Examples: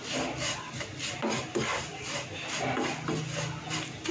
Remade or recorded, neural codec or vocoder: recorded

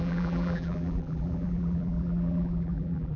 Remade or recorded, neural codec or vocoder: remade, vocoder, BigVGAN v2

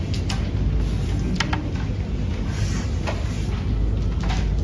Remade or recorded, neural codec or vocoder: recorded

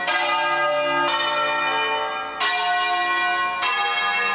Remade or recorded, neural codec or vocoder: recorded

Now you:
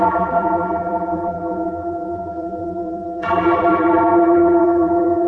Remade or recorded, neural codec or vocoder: remade, vocoder, BigVGAN v2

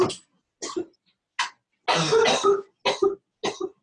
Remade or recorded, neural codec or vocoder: recorded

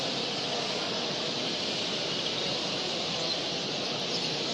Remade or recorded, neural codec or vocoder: recorded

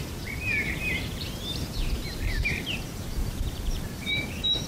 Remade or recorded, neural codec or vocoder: remade, vocoder, BigVGAN v2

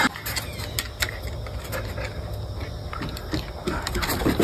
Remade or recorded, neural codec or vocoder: recorded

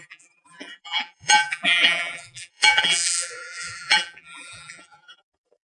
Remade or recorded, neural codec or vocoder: remade, vocoder, BigVGAN v2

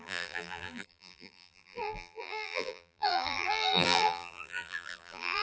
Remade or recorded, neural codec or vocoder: remade, vocoder, BigVGAN v2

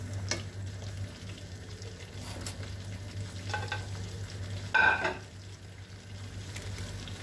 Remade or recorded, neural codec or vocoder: recorded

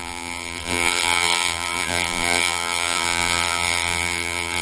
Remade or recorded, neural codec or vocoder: remade, vocoder, BigVGAN v2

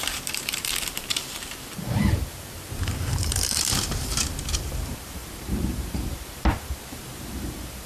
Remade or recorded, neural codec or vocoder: remade, vocoder, BigVGAN v2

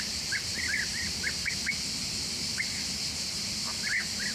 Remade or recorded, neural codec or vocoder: recorded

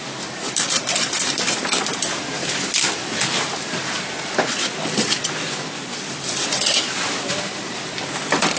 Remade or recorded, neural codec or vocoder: remade, vocoder, BigVGAN v2